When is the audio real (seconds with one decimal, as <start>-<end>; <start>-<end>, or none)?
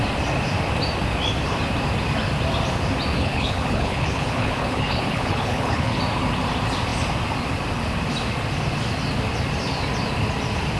0.0-3.1; 6.0-10.8